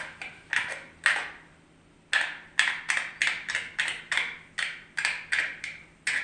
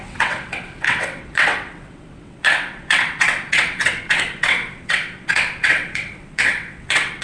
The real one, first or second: first